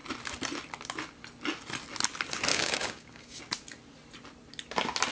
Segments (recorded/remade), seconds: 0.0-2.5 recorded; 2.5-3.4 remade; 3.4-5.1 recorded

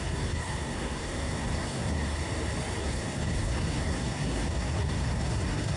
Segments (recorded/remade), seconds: 0.0-2.2 remade; 2.2-2.8 recorded; 2.8-5.8 remade

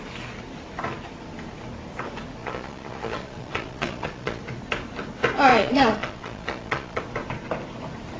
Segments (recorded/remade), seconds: 0.0-2.4 recorded; 2.4-4.4 remade; 4.4-5.5 recorded; 5.5-7.0 remade; 7.0-8.2 recorded